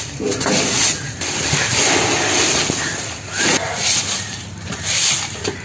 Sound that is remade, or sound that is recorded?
remade